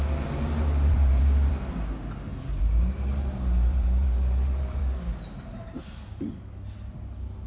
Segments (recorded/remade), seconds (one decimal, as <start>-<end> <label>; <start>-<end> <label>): 0.0-0.9 recorded; 0.9-1.5 remade; 1.5-2.3 recorded; 2.3-4.8 remade; 4.8-5.5 recorded; 5.5-6.3 remade; 6.3-7.5 recorded